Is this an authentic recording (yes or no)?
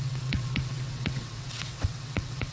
no